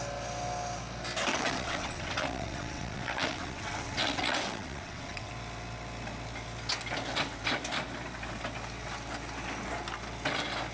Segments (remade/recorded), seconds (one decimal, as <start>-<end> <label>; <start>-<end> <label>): 0.0-1.3 recorded; 1.3-5.3 remade; 5.3-10.7 recorded